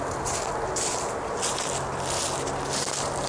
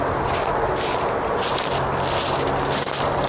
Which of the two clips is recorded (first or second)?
first